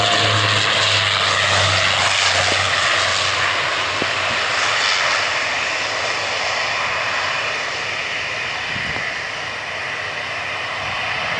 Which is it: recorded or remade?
recorded